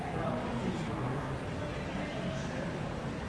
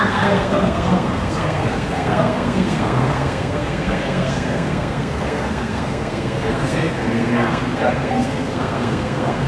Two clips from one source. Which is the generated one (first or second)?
second